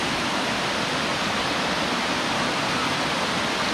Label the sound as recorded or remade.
recorded